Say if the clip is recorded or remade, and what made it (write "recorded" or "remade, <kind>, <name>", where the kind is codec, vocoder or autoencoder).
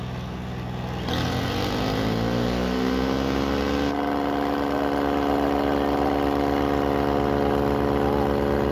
recorded